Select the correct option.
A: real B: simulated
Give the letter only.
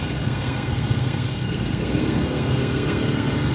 B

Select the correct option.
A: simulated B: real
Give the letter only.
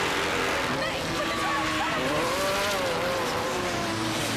B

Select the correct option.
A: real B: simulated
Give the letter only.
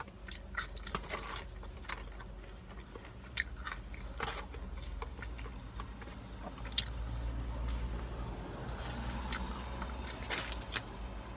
A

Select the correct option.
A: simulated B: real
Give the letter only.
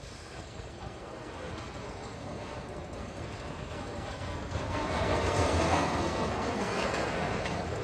A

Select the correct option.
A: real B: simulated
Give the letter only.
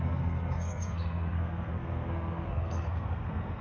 B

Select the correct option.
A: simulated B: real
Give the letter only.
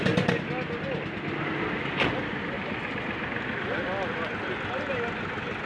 B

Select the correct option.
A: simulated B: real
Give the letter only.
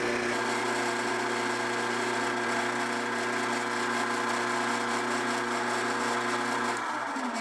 B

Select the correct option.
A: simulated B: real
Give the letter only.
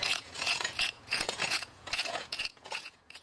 A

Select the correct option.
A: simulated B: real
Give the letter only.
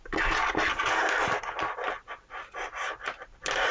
B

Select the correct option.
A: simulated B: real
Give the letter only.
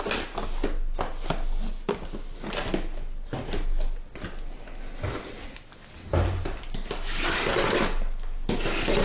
B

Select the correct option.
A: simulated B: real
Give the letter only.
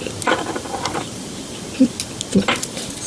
B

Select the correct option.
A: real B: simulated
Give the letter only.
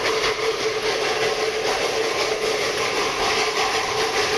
A